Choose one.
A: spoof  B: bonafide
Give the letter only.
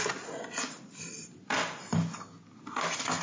B